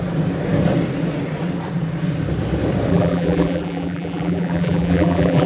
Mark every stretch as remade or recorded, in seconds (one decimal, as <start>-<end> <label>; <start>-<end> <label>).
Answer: 0.0-2.9 recorded; 2.9-5.5 remade